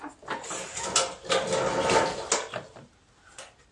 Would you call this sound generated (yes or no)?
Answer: no